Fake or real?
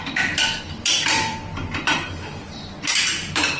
fake